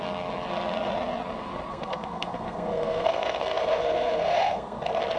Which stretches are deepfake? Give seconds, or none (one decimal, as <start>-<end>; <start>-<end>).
1.7-4.8